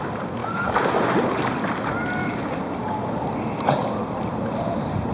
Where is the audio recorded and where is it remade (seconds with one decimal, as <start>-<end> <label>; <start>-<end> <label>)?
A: 0.0-0.4 recorded; 0.4-0.9 remade; 0.9-2.2 recorded; 2.2-3.1 remade; 3.1-5.1 recorded